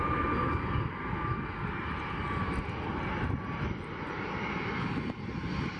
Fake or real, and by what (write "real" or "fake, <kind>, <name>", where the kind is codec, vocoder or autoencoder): real